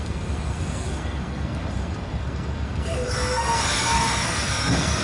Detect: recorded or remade remade